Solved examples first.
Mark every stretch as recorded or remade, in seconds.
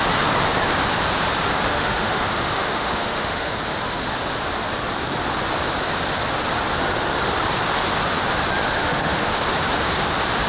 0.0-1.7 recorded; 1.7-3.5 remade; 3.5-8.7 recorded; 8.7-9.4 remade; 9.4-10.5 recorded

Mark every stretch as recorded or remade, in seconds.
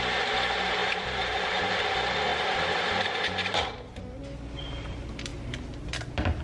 0.0-0.8 recorded; 0.8-1.7 remade; 1.7-2.3 recorded; 2.3-3.7 remade; 3.7-6.4 recorded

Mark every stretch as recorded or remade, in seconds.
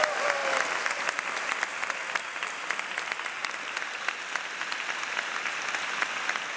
0.0-6.6 recorded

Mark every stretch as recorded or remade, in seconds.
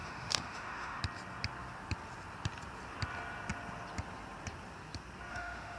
0.0-1.0 remade; 1.0-5.3 recorded; 5.3-5.8 remade